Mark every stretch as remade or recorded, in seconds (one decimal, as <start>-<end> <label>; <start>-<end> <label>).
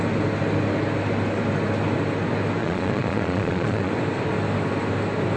0.0-2.6 recorded; 2.6-3.9 remade; 3.9-5.4 recorded